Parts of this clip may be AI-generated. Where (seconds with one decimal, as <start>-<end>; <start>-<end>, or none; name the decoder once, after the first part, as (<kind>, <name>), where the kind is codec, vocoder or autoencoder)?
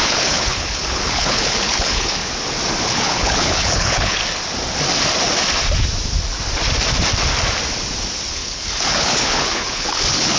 0.0-2.2 (codec, HILCodec); 2.8-4.2; 8.3-10.4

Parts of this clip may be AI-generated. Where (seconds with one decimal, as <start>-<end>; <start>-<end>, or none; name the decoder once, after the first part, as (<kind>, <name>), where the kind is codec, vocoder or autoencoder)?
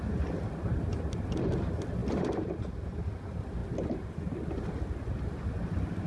0.0-6.1 (vocoder, BigVGAN v2)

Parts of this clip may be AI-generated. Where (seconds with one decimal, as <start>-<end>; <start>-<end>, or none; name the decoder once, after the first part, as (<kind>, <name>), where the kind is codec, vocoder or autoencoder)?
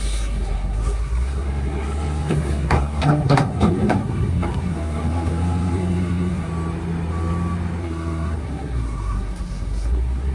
0.0-6.5 (codec, SNAC); 7.8-10.3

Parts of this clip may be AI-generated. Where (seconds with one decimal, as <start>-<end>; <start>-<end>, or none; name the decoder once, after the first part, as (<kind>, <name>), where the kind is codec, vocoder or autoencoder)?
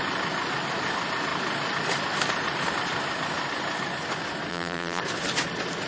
4.5-5.0 (vocoder, BigVGAN v2)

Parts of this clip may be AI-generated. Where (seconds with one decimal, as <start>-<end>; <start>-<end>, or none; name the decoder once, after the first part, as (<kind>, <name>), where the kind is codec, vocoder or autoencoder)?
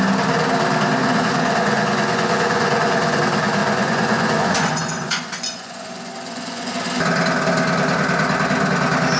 1.0-3.2 (vocoder, Vocos); 3.6-6.7